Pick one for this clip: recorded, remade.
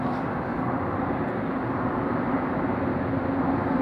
recorded